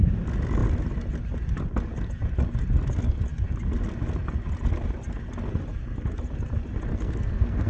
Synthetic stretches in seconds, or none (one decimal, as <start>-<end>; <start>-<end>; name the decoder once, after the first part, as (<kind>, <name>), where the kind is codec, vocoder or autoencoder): 6.9-7.7 (codec, SNAC)